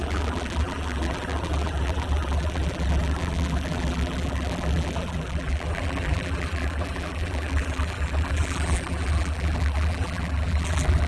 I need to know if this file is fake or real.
fake